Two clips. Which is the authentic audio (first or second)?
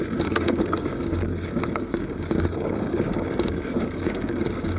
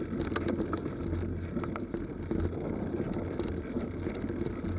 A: second